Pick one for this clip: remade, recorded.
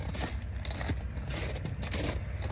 recorded